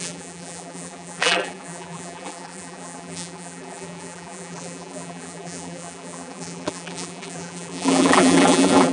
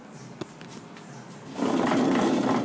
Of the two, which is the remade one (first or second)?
first